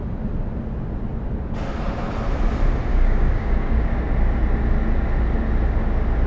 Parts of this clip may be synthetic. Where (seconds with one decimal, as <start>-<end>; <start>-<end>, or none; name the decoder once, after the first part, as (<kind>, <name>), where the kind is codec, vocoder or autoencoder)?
2.9-4.0 (codec, DAC)